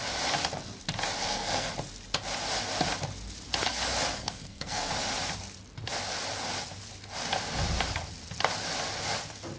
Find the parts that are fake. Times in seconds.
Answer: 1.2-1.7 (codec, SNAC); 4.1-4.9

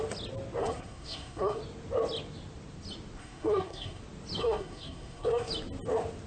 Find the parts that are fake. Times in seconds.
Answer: 0.6-1.6 (codec, SNAC); 3.2-4.0; 4.4-5.5